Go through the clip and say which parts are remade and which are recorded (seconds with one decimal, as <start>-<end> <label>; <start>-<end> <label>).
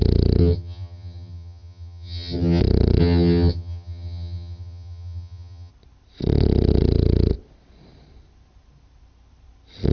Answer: 0.0-0.4 recorded; 0.4-2.6 remade; 2.6-3.0 recorded; 3.0-5.7 remade; 5.7-9.9 recorded